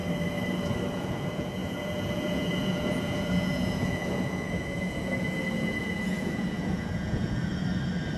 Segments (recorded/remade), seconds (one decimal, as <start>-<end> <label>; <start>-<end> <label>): 0.0-0.9 recorded; 0.9-7.5 remade; 7.5-8.2 recorded